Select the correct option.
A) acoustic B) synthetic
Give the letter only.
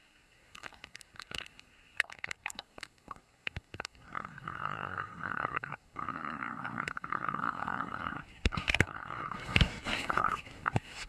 B